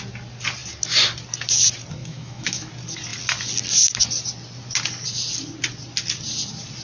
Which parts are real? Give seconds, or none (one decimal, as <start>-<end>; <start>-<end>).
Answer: 0.0-2.0; 2.7-6.8